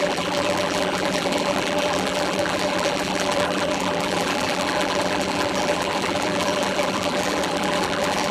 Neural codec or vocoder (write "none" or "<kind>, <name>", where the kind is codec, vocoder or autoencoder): vocoder, BigVGAN v2